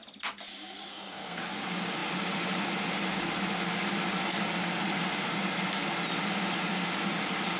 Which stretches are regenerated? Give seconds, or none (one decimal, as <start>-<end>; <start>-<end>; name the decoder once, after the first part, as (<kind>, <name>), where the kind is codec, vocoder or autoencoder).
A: 0.9-1.4 (codec, SNAC)